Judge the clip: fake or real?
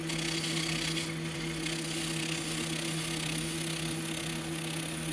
real